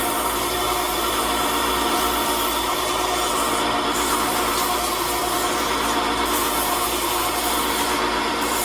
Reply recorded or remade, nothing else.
remade